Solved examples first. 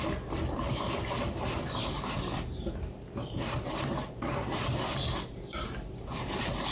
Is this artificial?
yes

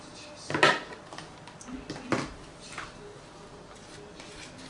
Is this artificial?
no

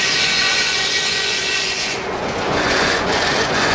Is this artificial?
yes